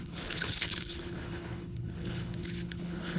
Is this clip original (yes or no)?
no